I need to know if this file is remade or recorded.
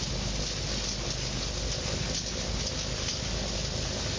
recorded